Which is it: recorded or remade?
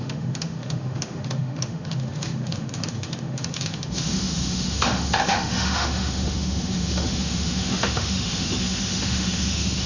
remade